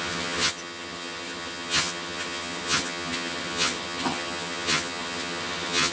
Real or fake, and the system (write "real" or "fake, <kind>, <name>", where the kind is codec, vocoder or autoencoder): fake, vocoder, HiFi-GAN